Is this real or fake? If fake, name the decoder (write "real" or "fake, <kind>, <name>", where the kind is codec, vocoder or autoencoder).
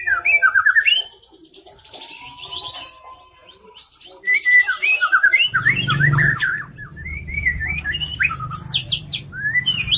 fake, vocoder, BigVGAN v2